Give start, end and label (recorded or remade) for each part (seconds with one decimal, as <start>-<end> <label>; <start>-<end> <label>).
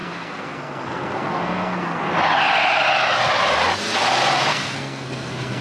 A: 0.0-2.0 remade; 2.0-4.5 recorded; 4.5-5.6 remade